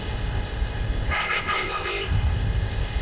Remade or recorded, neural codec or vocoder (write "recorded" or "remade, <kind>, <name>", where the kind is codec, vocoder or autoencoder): remade, codec, ZipCodec